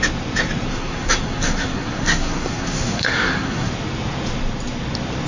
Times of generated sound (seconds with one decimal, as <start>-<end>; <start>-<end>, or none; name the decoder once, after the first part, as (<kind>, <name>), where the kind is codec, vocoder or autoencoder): 0.7-3.7 (codec, SNAC)